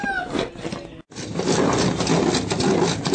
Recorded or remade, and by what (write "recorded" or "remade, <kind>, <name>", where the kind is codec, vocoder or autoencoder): recorded